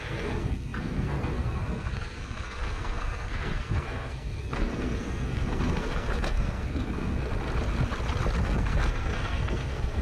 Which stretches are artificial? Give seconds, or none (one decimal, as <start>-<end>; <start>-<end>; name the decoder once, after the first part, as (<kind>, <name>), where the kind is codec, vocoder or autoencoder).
0.0-7.3 (codec, SNAC); 8.4-10.0